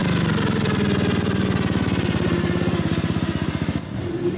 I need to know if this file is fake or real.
real